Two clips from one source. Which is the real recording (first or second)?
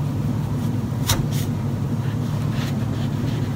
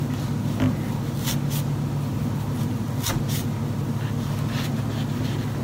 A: second